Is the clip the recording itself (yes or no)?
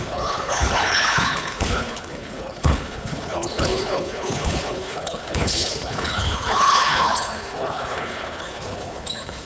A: no